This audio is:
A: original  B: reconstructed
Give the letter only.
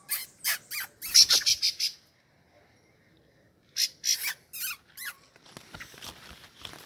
A